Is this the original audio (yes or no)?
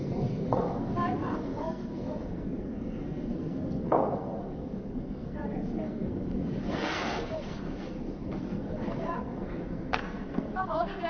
no